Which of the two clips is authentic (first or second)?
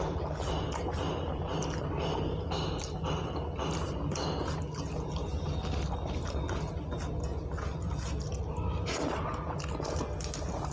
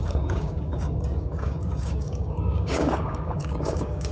first